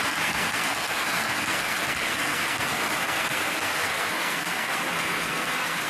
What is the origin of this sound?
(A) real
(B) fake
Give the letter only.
B